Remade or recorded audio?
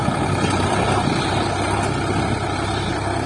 recorded